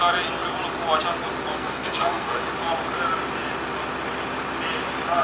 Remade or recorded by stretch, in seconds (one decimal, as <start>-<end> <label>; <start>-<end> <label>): 0.0-1.5 recorded; 1.5-2.4 remade; 2.4-5.2 recorded